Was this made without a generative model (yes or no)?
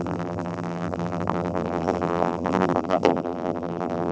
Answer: no